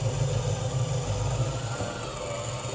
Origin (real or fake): real